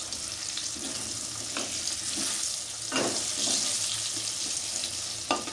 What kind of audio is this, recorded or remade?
recorded